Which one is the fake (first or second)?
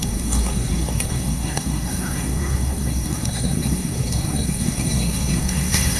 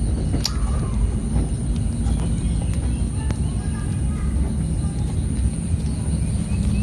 first